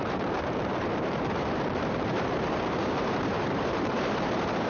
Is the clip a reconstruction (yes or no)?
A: yes